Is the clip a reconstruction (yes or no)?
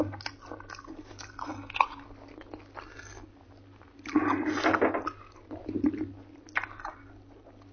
no